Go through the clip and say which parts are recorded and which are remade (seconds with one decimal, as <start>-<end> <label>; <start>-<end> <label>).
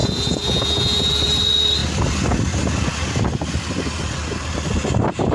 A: 0.0-1.1 remade; 1.1-5.3 recorded